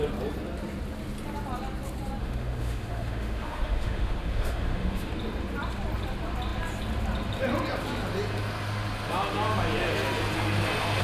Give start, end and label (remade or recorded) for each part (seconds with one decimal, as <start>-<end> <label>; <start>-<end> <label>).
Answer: 0.0-2.2 recorded; 2.2-5.1 remade; 5.1-11.0 recorded